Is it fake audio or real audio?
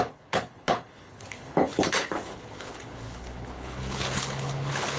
fake